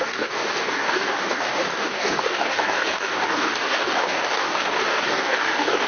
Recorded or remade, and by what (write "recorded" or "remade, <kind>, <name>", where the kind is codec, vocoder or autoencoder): remade, codec, DAC